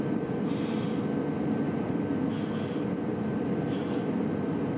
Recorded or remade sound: recorded